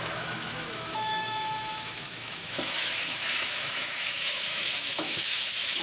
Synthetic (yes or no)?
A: yes